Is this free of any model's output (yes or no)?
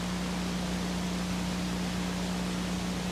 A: yes